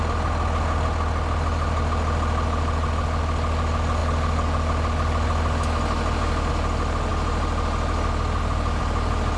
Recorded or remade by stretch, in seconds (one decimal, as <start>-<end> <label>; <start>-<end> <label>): 0.0-9.4 recorded